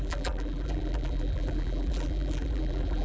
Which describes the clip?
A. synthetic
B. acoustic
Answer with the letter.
A